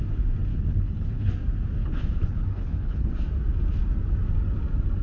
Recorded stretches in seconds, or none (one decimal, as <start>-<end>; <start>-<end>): 0.0-0.5; 1.3-1.8; 3.1-5.0